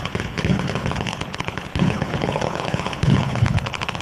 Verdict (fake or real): fake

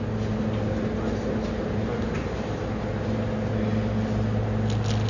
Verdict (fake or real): real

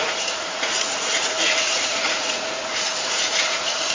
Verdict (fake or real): fake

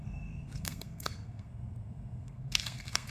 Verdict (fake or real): fake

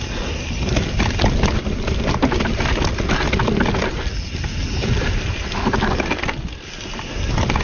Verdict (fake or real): real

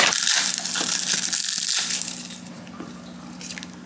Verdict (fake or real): real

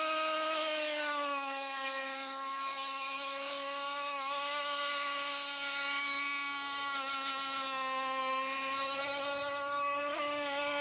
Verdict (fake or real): fake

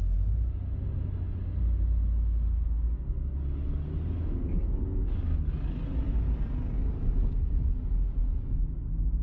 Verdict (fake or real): real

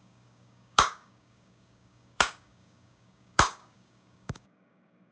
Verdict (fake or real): fake